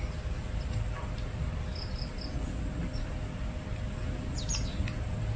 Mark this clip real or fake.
real